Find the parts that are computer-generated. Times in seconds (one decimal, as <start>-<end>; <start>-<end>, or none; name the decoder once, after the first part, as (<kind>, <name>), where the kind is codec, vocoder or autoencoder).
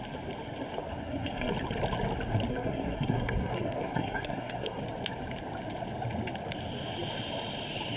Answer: 0.9-1.5 (codec, SNAC); 2.5-4.8